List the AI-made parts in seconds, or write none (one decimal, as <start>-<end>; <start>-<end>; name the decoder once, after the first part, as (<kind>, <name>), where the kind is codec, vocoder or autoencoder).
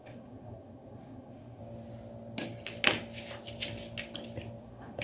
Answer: 0.0-1.6 (codec, SNAC); 4.6-5.0